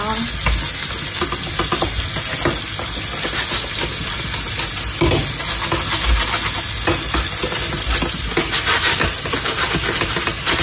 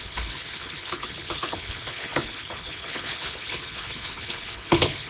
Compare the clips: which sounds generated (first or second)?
second